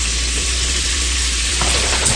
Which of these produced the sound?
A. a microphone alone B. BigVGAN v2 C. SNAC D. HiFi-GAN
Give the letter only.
B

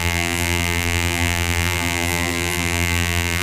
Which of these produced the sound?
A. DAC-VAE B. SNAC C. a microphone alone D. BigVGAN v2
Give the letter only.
D